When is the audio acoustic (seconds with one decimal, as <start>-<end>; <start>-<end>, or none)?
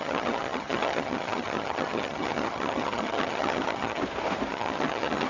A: 4.0-4.5